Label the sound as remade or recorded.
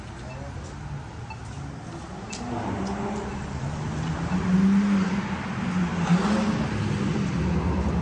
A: recorded